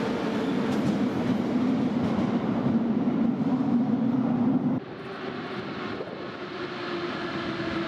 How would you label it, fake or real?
real